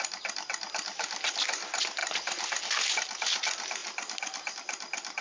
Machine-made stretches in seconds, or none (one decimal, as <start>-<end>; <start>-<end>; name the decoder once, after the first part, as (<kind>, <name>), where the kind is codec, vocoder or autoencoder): none